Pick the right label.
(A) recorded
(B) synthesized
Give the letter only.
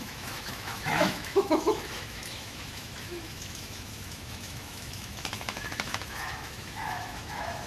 B